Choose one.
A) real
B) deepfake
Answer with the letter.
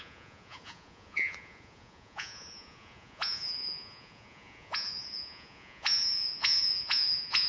B